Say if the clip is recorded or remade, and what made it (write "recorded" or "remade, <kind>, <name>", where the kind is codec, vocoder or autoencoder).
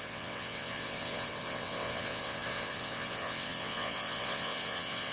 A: remade, vocoder, WaveNeXt